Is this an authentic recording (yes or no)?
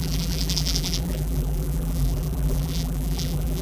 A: no